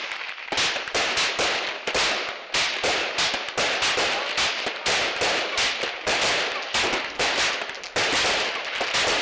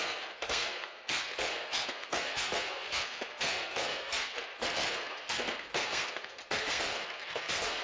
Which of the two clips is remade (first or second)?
second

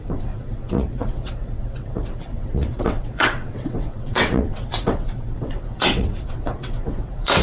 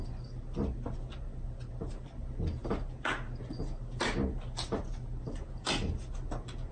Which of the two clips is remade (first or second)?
first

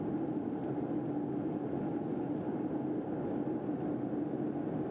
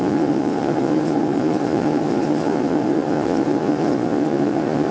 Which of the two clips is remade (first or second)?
second